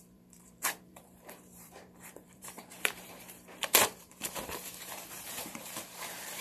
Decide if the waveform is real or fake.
fake